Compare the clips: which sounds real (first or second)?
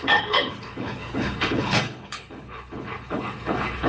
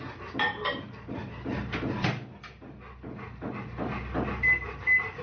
second